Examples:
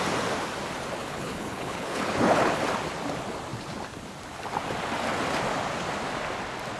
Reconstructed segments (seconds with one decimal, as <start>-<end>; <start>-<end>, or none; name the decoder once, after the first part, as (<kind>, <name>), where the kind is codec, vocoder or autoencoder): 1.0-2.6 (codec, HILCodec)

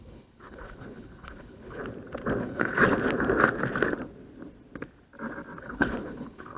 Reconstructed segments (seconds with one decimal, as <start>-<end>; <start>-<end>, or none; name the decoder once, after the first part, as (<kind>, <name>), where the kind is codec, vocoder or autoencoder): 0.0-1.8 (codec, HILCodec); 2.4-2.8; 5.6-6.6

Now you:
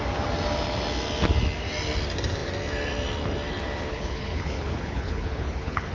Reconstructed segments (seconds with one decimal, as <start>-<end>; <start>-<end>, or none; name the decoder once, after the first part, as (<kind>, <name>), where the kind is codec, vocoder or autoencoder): 3.9-5.9 (codec, HILCodec)

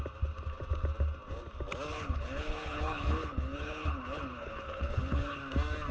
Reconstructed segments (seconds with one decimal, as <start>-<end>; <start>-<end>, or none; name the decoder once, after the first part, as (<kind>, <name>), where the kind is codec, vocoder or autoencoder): 1.9-5.4 (codec, HILCodec)